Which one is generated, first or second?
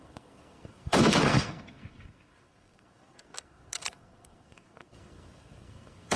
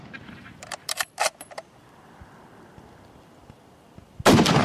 first